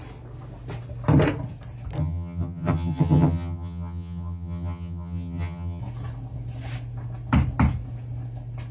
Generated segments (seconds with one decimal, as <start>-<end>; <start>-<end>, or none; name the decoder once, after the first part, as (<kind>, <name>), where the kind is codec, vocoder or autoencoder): 2.0-5.8 (vocoder, HiFi-GAN)